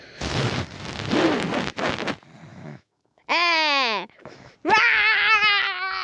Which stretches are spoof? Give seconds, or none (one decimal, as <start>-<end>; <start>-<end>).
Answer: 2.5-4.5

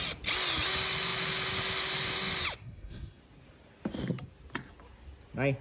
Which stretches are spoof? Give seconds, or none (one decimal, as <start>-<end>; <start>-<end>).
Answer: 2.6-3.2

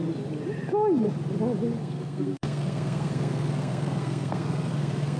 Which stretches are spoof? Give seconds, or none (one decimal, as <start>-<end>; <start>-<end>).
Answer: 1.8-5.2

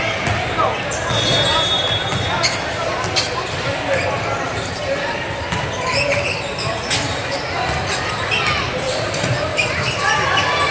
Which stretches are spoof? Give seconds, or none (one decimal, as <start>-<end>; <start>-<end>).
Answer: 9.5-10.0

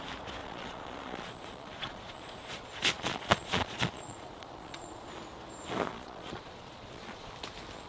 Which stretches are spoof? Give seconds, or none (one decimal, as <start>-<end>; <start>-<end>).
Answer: 0.4-5.1; 5.9-7.3

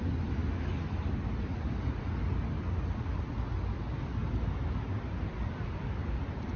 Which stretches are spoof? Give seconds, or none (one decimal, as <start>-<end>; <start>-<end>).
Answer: none

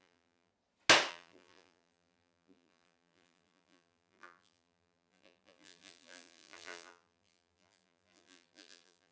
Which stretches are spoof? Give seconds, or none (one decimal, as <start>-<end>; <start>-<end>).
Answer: 0.0-0.5; 1.1-9.1

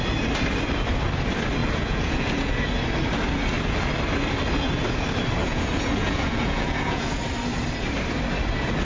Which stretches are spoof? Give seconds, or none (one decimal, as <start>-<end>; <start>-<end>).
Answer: 1.6-2.5; 5.4-7.2